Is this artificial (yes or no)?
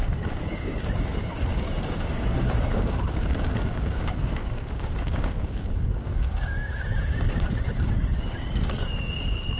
yes